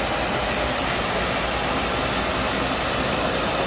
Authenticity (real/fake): real